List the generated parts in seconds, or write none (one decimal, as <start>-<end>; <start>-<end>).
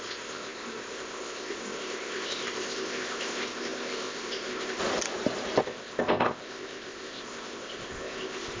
0.0-4.8; 5.6-8.6